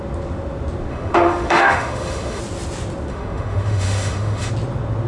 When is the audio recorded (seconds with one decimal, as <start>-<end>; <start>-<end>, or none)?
0.0-0.9; 2.4-3.1; 4.5-5.1